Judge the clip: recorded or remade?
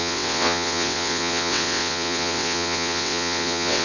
remade